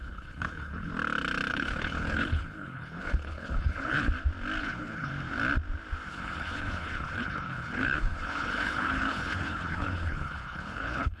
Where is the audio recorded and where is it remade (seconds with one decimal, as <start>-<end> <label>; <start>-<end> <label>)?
0.0-0.9 remade; 0.9-1.5 recorded; 1.5-4.1 remade; 4.1-4.6 recorded; 4.6-5.1 remade; 5.1-6.1 recorded; 6.1-11.2 remade